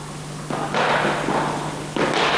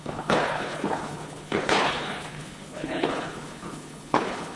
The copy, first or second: second